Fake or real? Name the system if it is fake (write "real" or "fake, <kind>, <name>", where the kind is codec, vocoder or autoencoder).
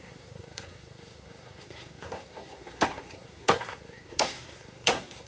fake, codec, SNAC